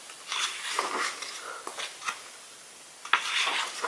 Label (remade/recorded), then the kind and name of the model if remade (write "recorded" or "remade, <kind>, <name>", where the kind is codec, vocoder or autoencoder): recorded